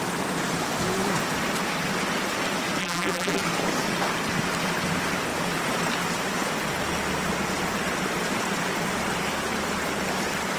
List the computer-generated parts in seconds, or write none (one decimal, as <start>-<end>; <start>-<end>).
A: 2.8-3.4